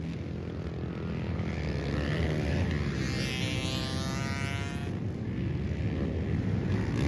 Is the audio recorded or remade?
recorded